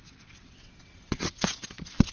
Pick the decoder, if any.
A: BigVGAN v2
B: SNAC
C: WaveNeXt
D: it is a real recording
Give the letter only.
C